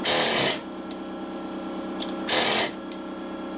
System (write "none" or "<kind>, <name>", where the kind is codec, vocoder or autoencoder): none